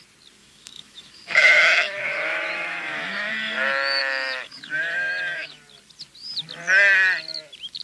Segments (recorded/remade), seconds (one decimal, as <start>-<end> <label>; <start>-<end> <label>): 0.0-0.4 recorded; 0.4-3.3 remade; 3.3-4.0 recorded; 4.0-5.6 remade; 5.6-7.8 recorded